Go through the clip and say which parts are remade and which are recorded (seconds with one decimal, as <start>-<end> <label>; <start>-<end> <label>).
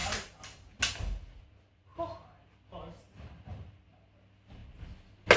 0.0-5.4 recorded